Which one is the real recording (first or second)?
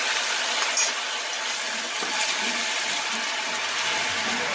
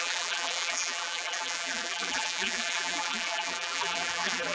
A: first